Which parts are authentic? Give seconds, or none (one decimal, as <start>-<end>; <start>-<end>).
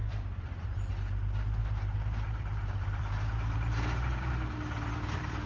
0.9-1.6; 4.3-5.5